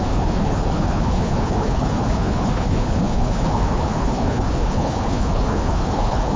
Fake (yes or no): yes